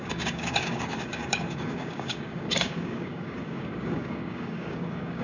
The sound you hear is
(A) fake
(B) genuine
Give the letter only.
A